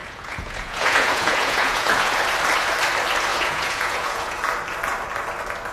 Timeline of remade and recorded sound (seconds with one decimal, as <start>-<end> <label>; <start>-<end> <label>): 0.0-2.2 remade; 2.2-3.3 recorded; 3.3-4.4 remade; 4.4-5.7 recorded